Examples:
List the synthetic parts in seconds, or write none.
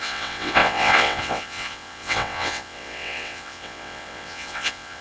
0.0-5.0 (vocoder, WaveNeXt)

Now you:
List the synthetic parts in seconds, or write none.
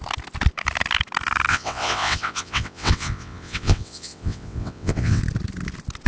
1.5-5.2 (vocoder, WaveNeXt)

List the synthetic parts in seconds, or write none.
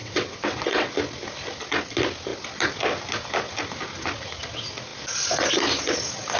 0.0-0.9 (vocoder, WaveNeXt)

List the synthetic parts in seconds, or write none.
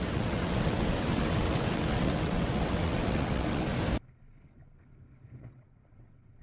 0.0-3.7 (vocoder, WaveNeXt); 5.4-6.4